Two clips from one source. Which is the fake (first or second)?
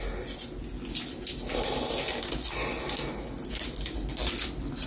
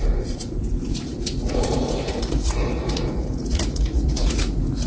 second